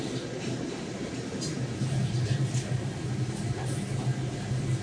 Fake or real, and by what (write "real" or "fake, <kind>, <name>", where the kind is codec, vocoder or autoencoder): real